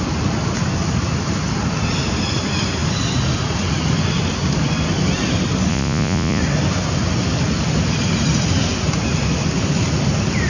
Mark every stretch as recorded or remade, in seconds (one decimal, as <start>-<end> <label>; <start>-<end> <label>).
0.0-5.7 recorded; 5.7-6.4 remade; 6.4-10.5 recorded